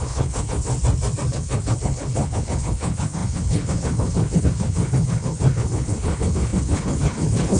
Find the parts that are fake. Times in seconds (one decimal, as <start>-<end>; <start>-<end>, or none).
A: 0.0-0.7; 1.3-7.6